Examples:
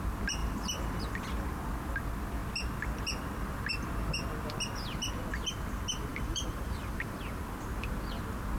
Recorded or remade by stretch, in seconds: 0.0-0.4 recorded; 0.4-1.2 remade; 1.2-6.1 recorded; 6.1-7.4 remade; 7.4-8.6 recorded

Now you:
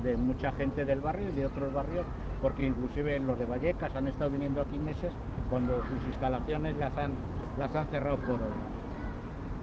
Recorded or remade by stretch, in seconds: 0.0-2.6 recorded; 2.6-3.4 remade; 3.4-4.1 recorded; 4.1-8.8 remade; 8.8-9.6 recorded

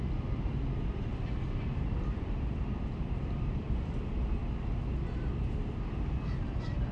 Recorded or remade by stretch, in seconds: 0.0-4.4 remade; 4.4-6.5 recorded; 6.5-6.9 remade

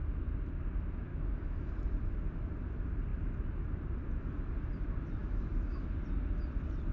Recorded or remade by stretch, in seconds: 0.0-1.1 recorded; 1.1-1.7 remade; 1.7-5.2 recorded; 5.2-5.9 remade; 5.9-6.9 recorded

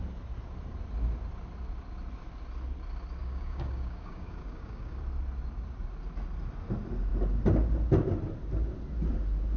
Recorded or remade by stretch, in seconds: 0.0-3.2 recorded; 3.2-5.0 remade; 5.0-9.6 recorded